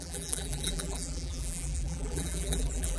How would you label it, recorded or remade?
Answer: remade